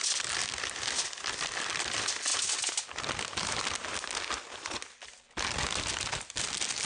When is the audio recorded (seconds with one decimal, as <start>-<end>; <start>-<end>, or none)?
0.0-6.9